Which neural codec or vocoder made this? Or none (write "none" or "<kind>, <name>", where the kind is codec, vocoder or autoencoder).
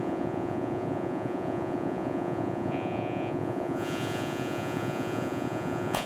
vocoder, Vocos